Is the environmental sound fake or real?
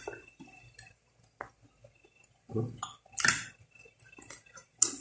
real